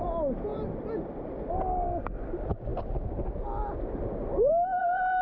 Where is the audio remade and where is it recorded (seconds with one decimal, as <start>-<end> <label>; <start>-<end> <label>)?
0.0-5.2 recorded